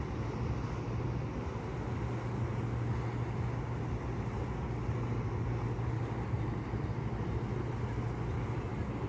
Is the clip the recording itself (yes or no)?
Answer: yes